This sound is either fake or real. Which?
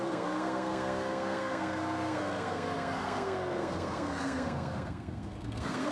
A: fake